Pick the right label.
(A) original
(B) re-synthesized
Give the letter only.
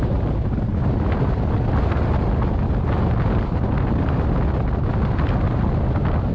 A